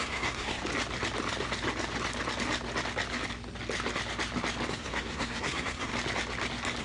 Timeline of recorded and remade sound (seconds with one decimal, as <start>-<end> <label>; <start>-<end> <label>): 0.0-0.6 remade; 0.6-4.7 recorded; 4.7-5.9 remade; 5.9-6.8 recorded